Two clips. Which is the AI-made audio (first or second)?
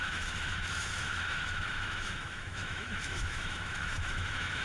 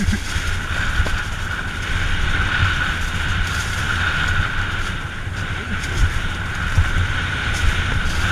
first